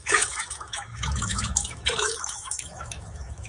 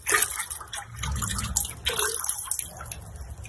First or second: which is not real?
first